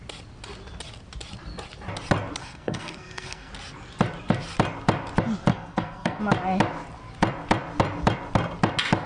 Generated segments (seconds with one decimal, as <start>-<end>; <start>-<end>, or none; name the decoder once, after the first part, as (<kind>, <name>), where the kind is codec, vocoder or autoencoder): 2.4-3.5 (codec, SNAC); 5.5-6.2